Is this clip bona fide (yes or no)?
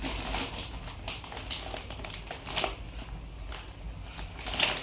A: yes